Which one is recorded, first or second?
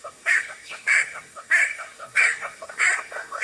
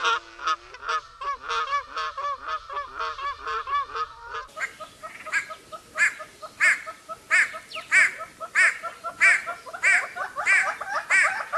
second